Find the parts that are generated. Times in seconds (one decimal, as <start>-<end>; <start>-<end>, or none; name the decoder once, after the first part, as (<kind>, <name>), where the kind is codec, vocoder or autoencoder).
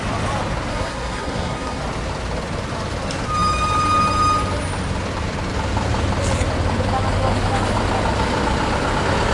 0.7-1.8 (codec, SNAC)